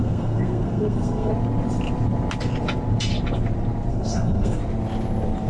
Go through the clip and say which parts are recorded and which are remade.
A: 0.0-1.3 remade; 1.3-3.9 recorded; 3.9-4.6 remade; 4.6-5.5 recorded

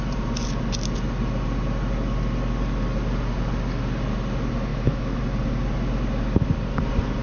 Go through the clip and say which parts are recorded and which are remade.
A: 0.0-4.7 recorded; 4.7-5.2 remade; 5.2-7.2 recorded

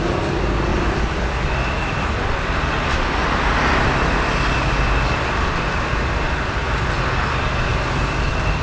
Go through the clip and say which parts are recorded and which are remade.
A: 0.0-0.7 recorded; 0.7-5.0 remade; 5.0-8.6 recorded

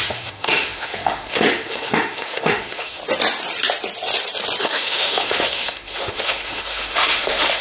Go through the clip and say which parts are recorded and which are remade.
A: 0.0-3.0 remade; 3.0-4.6 recorded; 4.6-7.6 remade

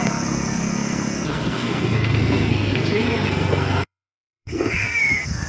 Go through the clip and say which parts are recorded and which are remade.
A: 0.0-5.5 remade

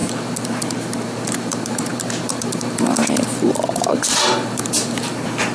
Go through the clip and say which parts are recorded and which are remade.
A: 0.0-5.5 remade

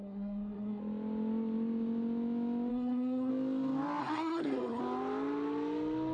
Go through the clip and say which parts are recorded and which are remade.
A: 0.0-0.8 remade; 0.8-2.7 recorded; 2.7-3.3 remade; 3.3-4.0 recorded; 4.0-4.8 remade; 4.8-6.1 recorded

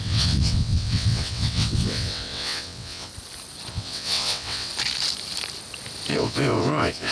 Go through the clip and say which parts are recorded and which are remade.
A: 0.0-3.1 remade; 3.1-3.7 recorded; 3.7-4.7 remade; 4.7-6.1 recorded; 6.1-7.1 remade